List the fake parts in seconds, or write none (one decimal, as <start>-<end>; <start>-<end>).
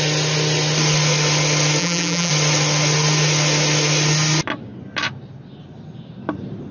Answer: 1.8-2.3